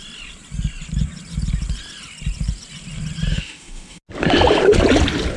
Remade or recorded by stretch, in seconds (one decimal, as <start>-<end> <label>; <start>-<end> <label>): 0.0-3.3 recorded; 3.3-4.0 remade; 4.0-5.4 recorded